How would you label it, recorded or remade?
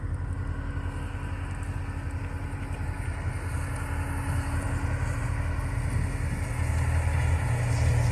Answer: recorded